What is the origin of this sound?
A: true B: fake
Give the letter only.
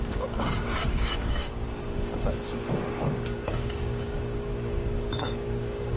B